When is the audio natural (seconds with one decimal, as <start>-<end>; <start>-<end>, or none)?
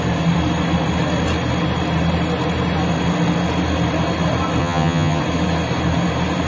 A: 0.0-4.6; 5.2-6.5